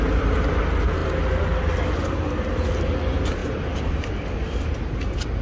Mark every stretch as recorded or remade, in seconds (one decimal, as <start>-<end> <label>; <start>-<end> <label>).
0.0-3.4 recorded; 3.4-5.0 remade; 5.0-5.4 recorded